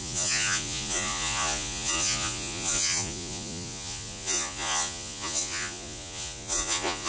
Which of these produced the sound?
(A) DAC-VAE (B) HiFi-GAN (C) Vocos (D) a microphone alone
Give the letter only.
C